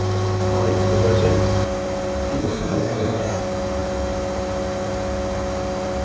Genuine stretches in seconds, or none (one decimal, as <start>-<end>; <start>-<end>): 0.0-2.4; 3.4-6.0